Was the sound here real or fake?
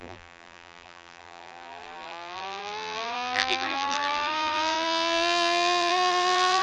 fake